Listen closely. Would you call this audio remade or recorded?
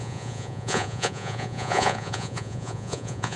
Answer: remade